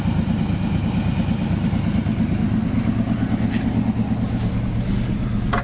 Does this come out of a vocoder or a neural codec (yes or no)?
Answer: no